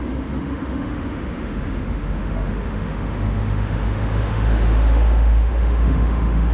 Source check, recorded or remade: remade